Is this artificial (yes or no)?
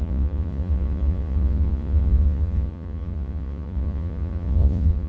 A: yes